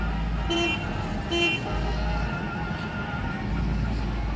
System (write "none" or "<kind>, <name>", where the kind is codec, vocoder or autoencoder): none